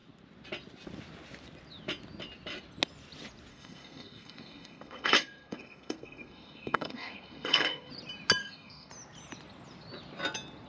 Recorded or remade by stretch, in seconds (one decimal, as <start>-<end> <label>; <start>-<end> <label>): 0.0-3.5 recorded; 3.5-7.9 remade; 7.9-8.4 recorded; 8.4-8.9 remade; 8.9-10.7 recorded